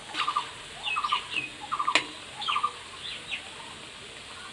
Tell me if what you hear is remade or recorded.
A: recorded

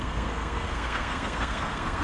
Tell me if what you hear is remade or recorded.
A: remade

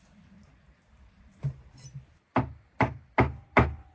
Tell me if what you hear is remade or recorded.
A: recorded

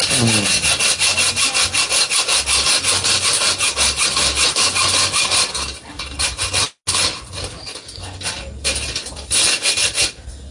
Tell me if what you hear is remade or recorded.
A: recorded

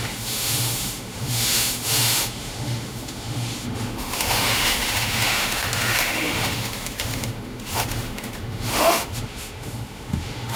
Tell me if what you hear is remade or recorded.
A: remade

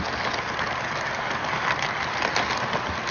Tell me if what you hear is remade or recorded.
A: recorded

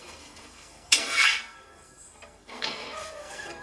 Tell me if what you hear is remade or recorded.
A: remade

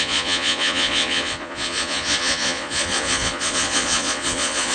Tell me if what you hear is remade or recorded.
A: remade